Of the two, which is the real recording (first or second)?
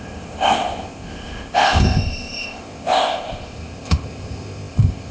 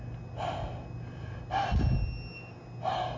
second